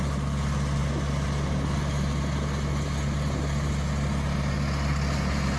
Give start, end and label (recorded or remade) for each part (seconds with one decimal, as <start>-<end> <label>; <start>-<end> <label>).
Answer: 0.0-5.6 recorded

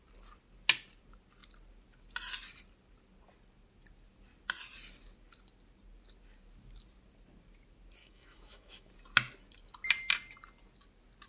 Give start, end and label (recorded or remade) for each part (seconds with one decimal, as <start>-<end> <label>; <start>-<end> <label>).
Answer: 0.0-8.0 recorded; 8.0-8.9 remade; 8.9-11.3 recorded

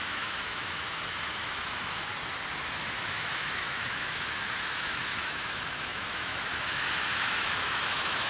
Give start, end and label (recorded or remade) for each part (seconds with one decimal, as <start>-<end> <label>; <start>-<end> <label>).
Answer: 0.0-2.1 remade; 2.1-2.8 recorded; 2.8-8.3 remade

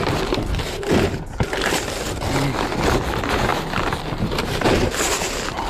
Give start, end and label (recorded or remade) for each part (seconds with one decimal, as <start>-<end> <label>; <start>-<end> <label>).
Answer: 0.0-5.7 recorded

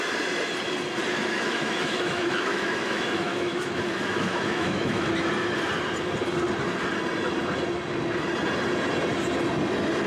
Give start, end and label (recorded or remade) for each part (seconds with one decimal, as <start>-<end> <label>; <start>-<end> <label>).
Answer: 0.0-1.2 recorded; 1.2-5.1 remade; 5.1-10.1 recorded

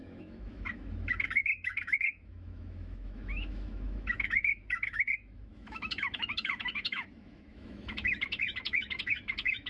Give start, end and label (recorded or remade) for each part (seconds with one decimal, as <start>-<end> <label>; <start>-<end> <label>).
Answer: 0.0-9.7 remade